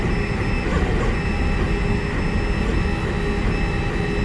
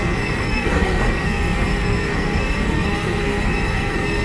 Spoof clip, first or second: second